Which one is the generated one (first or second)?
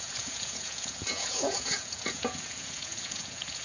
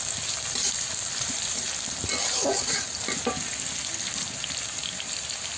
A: first